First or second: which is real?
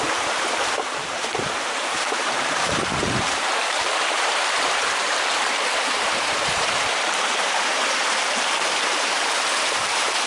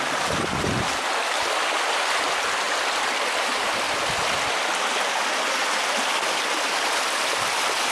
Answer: second